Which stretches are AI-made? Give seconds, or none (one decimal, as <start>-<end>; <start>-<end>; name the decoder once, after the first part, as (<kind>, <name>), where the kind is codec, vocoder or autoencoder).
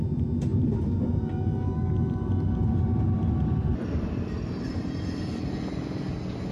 none